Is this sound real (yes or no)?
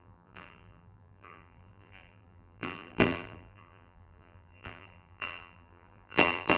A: no